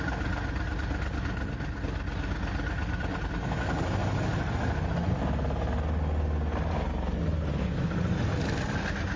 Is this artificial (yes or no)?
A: no